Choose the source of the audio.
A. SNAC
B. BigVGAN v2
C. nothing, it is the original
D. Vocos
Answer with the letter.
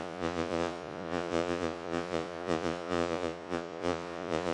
D